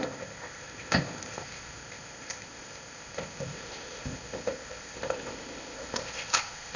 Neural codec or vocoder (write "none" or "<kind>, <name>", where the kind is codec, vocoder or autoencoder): codec, ZipCodec